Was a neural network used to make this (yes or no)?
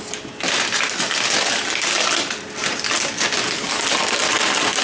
no